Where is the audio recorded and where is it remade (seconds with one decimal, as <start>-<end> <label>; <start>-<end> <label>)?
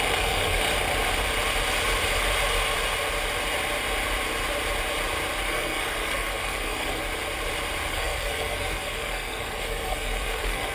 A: 0.0-0.6 remade; 0.6-5.5 recorded; 5.5-7.0 remade; 7.0-7.9 recorded; 7.9-10.7 remade